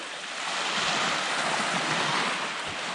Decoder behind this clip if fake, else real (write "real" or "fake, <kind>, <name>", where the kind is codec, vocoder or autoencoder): real